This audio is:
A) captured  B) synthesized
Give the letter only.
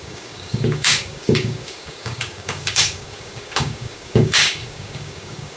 B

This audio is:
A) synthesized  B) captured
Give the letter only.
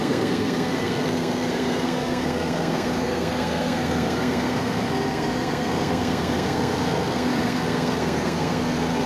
A